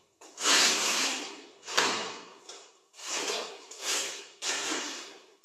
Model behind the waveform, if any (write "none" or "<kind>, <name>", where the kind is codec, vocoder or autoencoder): codec, SNAC